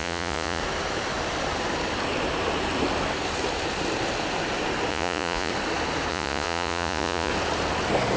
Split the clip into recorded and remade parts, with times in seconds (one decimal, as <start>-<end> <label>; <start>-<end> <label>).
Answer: 0.0-0.6 remade; 0.6-4.9 recorded; 4.9-5.5 remade; 5.5-6.1 recorded; 6.1-7.3 remade; 7.3-8.2 recorded